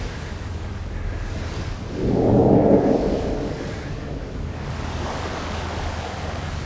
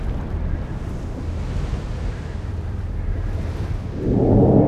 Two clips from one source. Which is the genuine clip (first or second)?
second